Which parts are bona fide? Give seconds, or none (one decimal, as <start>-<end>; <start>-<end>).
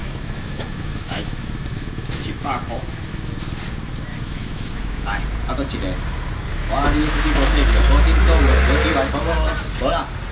3.3-4.1; 5.2-6.5; 8.4-10.3